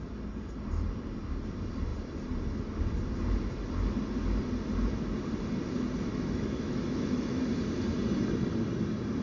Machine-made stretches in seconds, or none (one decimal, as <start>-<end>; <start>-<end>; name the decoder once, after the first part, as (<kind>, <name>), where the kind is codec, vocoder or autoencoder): 6.1-7.4 (autoencoder, DAC-VAE)